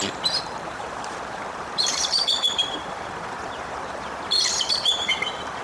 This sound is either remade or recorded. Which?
remade